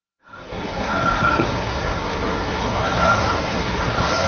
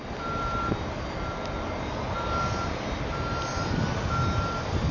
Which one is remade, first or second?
first